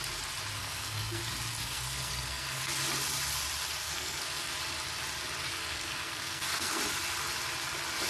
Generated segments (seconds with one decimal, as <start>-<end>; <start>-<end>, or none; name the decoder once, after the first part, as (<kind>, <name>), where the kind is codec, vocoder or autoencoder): 0.6-1.2 (codec, SNAC); 1.6-2.6; 3.8-4.5; 5.5-6.8